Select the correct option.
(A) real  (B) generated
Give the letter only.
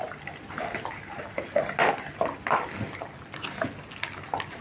A